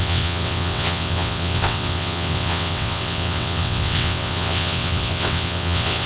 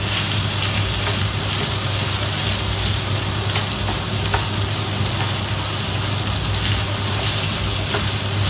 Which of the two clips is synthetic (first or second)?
first